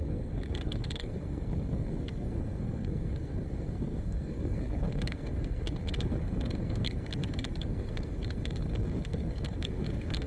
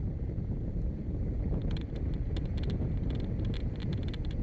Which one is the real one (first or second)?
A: second